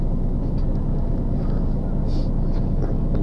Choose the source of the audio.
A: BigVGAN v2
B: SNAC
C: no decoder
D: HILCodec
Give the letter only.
C